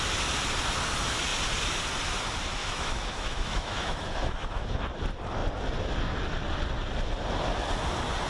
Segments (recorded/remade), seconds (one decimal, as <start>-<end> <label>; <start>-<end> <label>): 0.0-2.6 recorded; 2.6-4.8 remade; 4.8-8.3 recorded

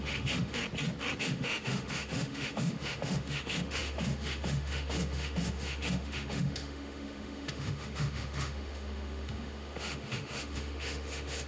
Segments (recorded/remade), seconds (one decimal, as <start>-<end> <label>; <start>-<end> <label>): 0.0-0.6 remade; 0.6-1.2 recorded; 1.2-11.5 remade